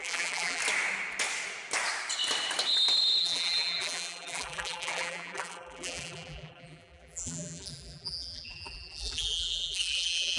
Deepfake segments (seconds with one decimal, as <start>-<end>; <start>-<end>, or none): 0.0-0.6; 3.2-10.4